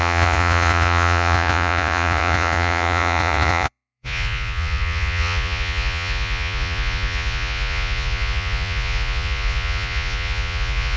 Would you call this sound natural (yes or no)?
no